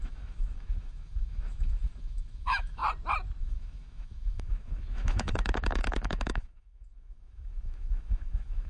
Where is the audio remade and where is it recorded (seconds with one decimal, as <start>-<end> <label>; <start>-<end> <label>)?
0.0-2.8 remade; 2.8-3.4 recorded; 3.4-8.7 remade